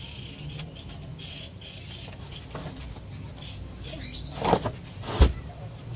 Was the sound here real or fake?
real